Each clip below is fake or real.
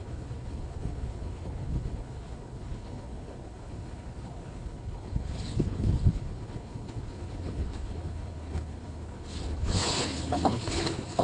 fake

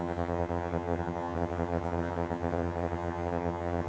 fake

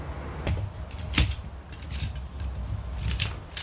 real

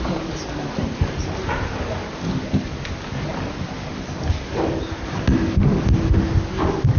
real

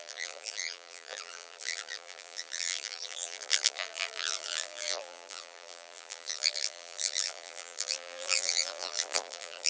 fake